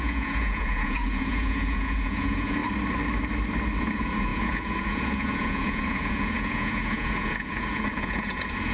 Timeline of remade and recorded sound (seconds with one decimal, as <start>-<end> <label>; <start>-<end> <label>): 0.0-2.6 remade; 2.6-3.8 recorded; 3.8-8.7 remade